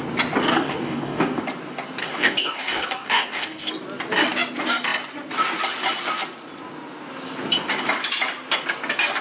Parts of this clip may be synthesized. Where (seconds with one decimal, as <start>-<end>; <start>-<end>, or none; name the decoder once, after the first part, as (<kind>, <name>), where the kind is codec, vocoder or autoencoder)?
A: 0.5-1.4 (codec, DAC); 2.0-3.7